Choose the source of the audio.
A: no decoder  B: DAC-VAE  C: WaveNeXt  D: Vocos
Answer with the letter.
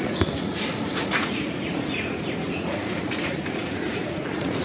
D